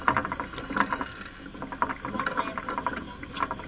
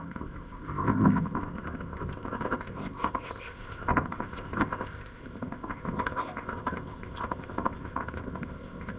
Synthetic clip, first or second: second